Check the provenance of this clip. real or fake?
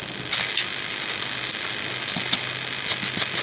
real